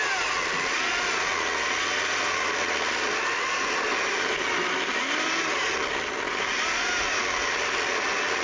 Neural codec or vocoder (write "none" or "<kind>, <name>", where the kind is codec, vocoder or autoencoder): none